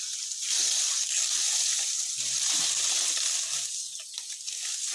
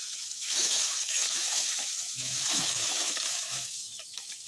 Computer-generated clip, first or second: second